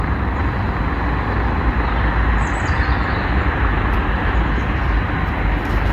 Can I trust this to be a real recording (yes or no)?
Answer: yes